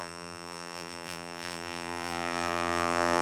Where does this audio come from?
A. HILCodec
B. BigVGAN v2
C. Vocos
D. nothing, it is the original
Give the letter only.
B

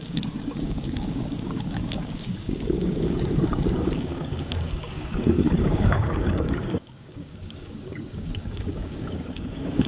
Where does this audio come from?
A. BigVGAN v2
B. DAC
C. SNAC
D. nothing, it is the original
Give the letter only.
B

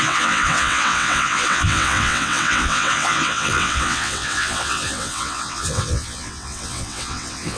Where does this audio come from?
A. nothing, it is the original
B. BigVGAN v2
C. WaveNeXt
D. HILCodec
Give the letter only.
C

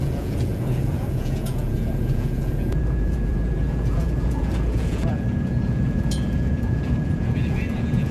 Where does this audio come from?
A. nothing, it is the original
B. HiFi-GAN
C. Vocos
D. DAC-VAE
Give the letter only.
C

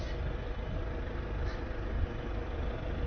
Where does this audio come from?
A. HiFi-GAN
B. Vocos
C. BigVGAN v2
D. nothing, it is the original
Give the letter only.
D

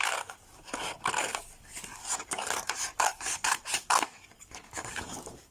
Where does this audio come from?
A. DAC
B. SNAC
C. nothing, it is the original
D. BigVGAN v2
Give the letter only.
A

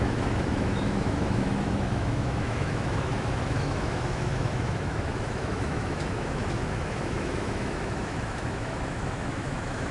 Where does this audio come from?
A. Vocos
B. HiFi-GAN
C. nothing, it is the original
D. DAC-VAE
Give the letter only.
D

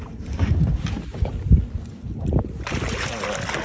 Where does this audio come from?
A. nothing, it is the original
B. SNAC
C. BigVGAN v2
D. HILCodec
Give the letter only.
A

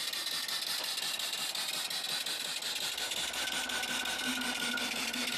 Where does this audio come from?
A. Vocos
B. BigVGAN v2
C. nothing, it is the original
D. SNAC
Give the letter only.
C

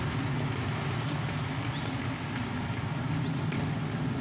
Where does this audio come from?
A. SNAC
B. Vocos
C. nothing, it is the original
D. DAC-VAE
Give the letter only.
C